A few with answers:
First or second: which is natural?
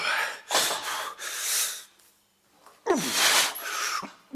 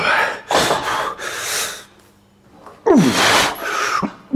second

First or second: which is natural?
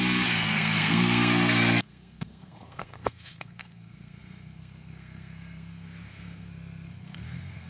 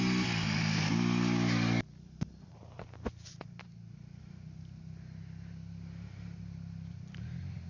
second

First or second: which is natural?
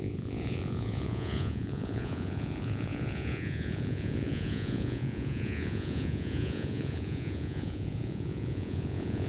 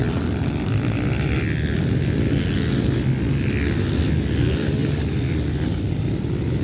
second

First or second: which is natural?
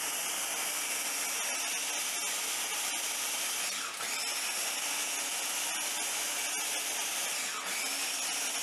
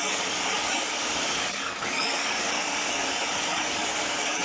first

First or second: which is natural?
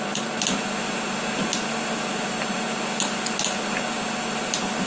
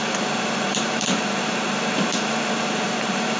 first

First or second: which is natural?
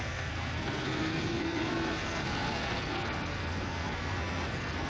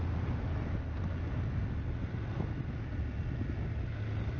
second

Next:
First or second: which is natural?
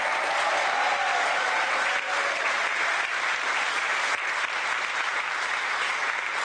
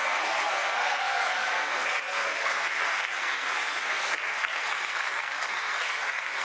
first